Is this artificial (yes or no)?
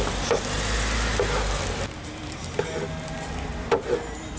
no